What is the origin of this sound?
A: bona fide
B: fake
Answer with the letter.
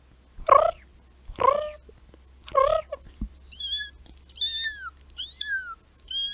A